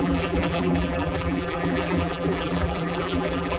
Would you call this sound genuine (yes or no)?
no